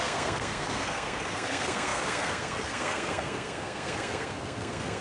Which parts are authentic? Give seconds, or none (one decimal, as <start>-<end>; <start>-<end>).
none